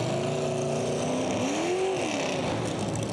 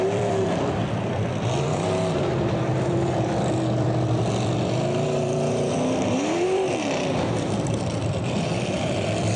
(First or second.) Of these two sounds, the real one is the first